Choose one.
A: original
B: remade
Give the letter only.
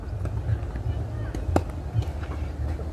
A